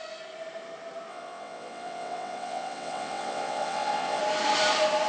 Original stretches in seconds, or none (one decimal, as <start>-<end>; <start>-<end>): 0.0-1.1; 4.2-5.1